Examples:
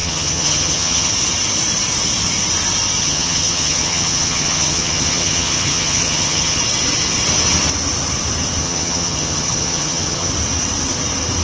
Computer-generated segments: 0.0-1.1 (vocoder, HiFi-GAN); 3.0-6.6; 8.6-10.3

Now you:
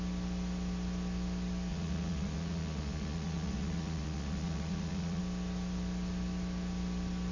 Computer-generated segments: 1.7-5.2 (vocoder, Vocos)